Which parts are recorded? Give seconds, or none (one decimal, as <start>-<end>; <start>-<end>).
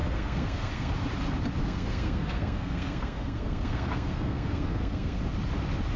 0.9-1.6; 5.2-6.0